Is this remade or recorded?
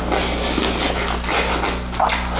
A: recorded